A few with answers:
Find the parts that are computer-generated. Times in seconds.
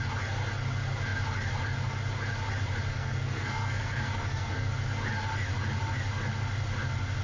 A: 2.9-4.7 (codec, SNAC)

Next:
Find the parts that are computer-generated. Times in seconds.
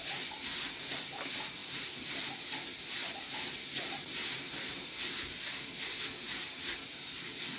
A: none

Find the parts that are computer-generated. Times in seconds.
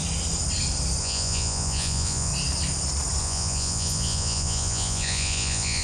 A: 1.0-2.3 (vocoder, Vocos); 3.2-5.8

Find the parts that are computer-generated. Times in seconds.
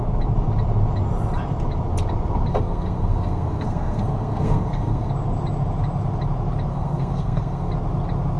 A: 2.5-5.1 (codec, SNAC); 6.7-7.7